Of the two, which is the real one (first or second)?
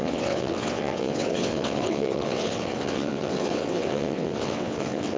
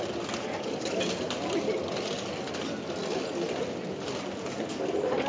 second